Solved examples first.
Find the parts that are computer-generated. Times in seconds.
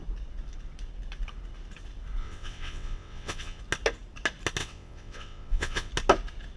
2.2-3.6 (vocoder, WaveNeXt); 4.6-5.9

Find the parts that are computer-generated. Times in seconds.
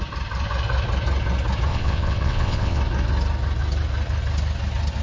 1.7-2.8 (vocoder, WaveNeXt)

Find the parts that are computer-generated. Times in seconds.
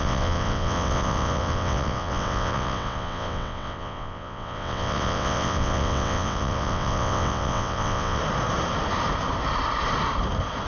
0.0-8.2 (vocoder, WaveNeXt)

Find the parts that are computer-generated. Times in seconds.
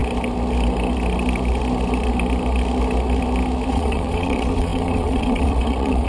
3.7-6.1 (vocoder, WaveNeXt)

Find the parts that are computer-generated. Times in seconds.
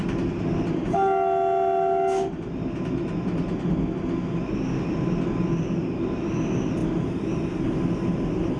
none